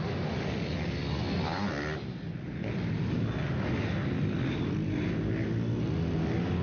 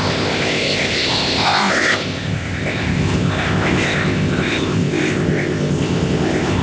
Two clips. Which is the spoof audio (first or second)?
second